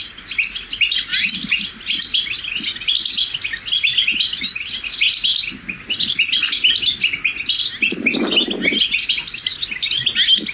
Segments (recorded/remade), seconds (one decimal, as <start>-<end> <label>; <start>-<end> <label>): 0.0-10.5 recorded